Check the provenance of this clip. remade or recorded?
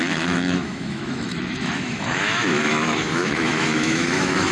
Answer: remade